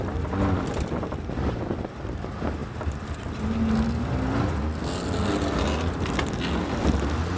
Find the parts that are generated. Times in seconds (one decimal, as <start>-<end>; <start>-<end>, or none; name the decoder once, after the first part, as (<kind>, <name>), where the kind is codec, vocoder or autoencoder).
none